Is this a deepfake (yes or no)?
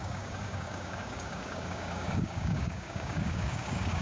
yes